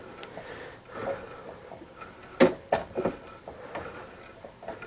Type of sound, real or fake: real